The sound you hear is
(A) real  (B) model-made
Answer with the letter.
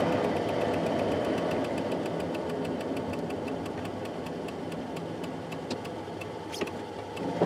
A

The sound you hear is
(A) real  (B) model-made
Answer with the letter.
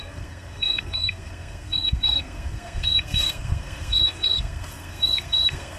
B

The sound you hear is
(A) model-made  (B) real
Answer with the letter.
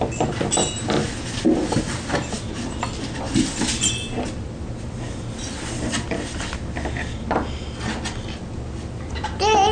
B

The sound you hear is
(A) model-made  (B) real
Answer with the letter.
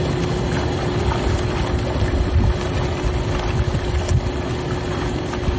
B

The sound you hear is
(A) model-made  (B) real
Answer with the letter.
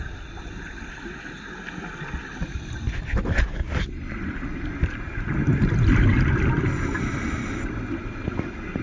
B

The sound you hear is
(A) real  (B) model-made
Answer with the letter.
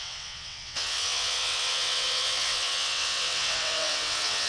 B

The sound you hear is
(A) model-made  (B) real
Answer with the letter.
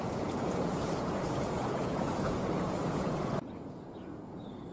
A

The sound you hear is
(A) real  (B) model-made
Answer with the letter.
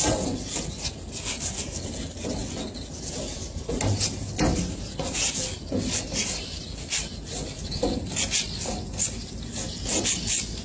A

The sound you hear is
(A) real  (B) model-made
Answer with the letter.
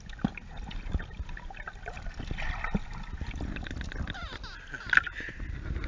A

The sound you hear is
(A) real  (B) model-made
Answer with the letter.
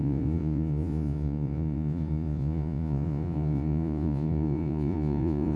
B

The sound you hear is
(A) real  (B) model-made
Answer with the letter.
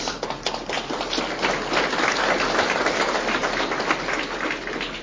A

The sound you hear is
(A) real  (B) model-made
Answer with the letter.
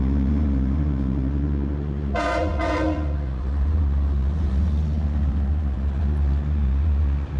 B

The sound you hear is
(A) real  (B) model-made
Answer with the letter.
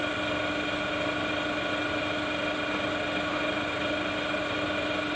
A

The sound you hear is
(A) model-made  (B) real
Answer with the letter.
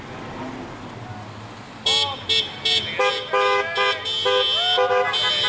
B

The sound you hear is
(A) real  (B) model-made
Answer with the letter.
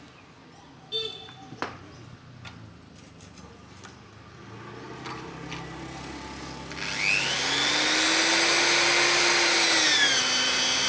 A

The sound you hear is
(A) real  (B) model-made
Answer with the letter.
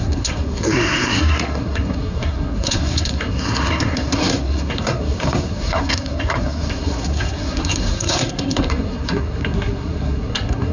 B